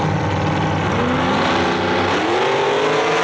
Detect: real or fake real